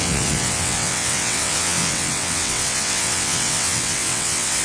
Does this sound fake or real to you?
fake